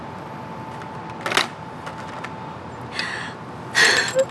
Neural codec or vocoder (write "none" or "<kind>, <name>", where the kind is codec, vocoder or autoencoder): none